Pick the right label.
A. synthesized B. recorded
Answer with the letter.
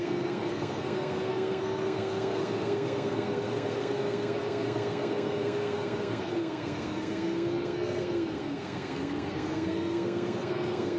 A